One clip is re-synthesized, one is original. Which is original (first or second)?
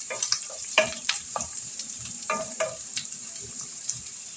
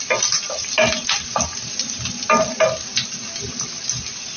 second